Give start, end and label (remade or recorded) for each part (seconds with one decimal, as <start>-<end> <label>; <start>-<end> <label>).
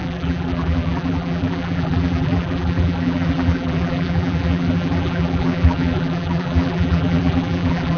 0.0-8.0 remade